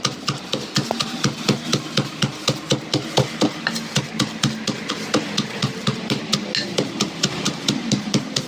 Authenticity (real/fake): real